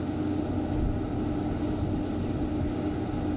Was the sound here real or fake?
real